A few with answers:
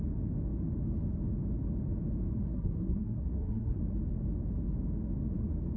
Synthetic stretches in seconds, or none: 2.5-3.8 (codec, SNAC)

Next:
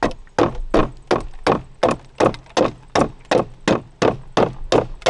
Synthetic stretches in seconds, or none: none